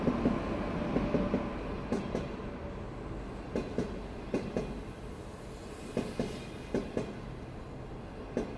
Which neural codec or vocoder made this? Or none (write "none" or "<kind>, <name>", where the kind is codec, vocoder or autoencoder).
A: none